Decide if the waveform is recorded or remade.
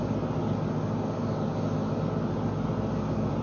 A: recorded